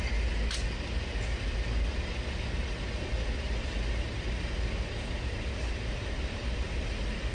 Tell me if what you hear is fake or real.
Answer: real